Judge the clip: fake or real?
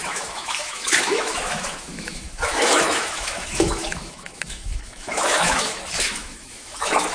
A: fake